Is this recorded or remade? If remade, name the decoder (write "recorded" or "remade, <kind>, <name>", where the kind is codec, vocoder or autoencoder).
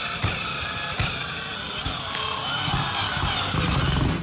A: remade, vocoder, BigVGAN v2